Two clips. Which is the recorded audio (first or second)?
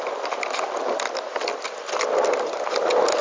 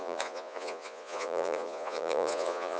first